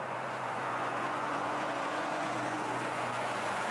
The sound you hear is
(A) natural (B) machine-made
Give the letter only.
B